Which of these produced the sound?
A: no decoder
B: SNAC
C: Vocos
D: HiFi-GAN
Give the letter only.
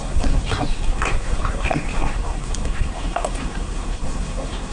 B